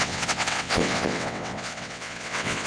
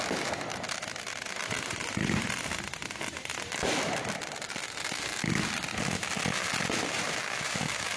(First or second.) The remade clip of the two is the first